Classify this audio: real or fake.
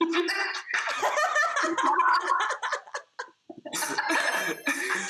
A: real